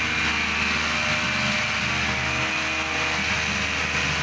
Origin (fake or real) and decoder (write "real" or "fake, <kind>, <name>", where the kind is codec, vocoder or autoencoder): real